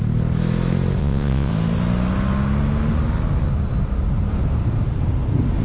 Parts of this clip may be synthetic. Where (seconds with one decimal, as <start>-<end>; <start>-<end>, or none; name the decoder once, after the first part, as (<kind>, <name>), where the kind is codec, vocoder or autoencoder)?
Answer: 1.0-1.5 (vocoder, WaveNeXt)